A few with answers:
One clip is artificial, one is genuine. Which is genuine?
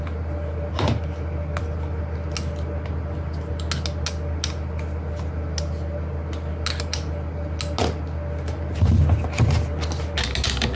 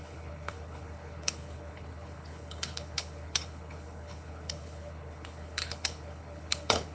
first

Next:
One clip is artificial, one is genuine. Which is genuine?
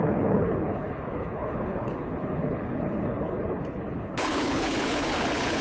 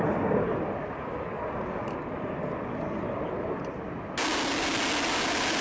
second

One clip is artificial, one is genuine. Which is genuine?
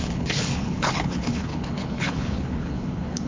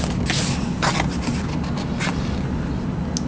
second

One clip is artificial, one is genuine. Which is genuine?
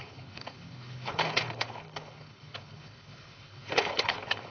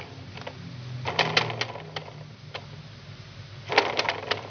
second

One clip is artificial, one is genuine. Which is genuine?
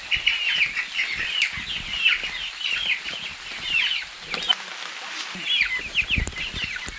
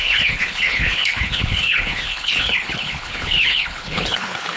first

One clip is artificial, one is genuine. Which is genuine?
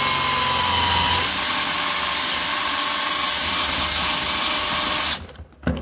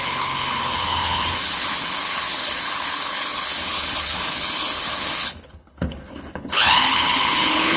first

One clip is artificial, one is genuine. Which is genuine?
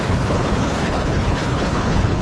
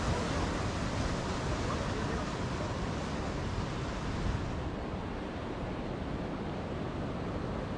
second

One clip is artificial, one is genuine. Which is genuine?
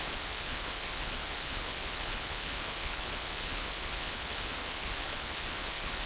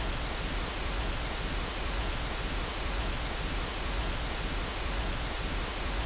second